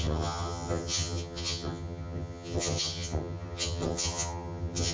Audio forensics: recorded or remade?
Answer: remade